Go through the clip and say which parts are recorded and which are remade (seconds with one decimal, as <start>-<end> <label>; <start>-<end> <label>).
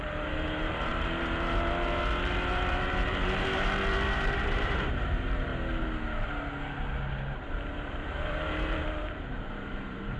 0.0-5.5 remade; 5.5-7.4 recorded; 7.4-10.2 remade